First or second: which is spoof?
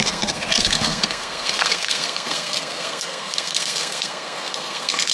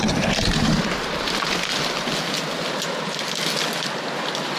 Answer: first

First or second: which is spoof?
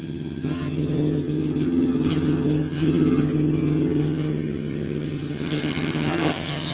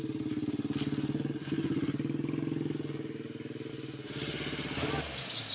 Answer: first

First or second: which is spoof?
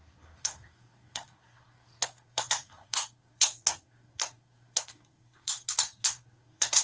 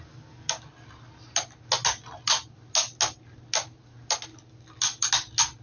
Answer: first